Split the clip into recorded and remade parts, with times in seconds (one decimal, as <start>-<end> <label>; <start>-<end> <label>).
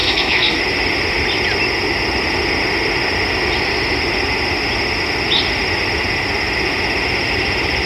0.0-0.6 remade; 0.6-7.9 recorded